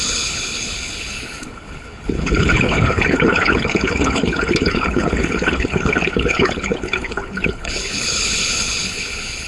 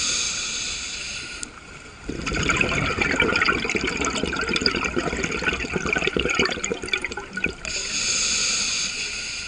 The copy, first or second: first